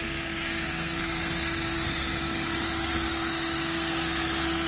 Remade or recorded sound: remade